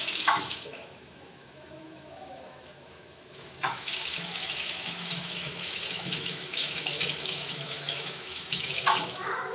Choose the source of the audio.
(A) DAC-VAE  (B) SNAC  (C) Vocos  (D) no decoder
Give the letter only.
A